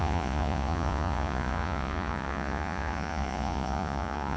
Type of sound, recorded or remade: remade